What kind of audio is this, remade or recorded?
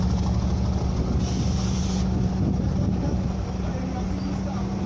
recorded